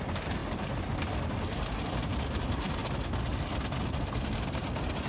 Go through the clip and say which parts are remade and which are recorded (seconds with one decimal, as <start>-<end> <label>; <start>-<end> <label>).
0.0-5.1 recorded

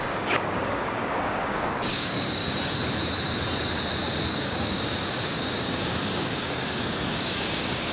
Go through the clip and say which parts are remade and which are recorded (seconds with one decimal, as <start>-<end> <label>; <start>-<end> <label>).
0.0-2.4 remade; 2.4-4.3 recorded; 4.3-7.9 remade

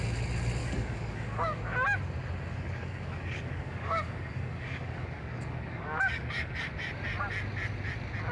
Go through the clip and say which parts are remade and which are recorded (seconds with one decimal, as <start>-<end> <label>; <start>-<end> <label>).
0.0-0.6 recorded; 0.6-1.6 remade; 1.6-2.5 recorded; 2.5-6.7 remade; 6.7-8.3 recorded

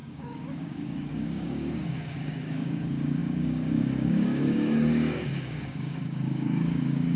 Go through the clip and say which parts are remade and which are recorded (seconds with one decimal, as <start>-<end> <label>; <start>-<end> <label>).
0.0-7.2 remade

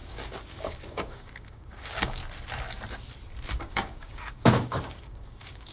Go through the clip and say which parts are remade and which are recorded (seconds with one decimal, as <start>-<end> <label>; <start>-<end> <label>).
0.0-2.2 remade; 2.2-3.6 recorded; 3.6-5.7 remade

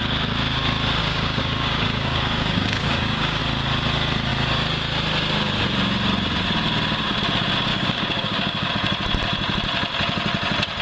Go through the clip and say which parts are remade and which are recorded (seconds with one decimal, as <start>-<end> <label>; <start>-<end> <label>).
0.0-1.0 recorded; 1.0-3.4 remade; 3.4-7.7 recorded; 7.7-8.7 remade; 8.7-10.8 recorded

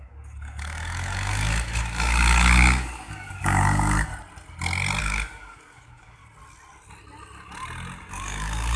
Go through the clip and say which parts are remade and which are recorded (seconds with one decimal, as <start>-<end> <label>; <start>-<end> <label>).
0.0-4.1 remade; 4.1-5.0 recorded; 5.0-6.2 remade; 6.2-8.1 recorded; 8.1-8.8 remade